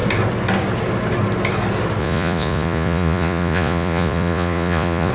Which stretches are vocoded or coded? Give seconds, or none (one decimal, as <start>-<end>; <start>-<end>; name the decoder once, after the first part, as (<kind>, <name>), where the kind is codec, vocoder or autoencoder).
2.0-5.1 (vocoder, Vocos)